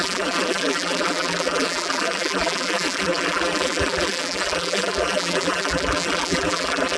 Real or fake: fake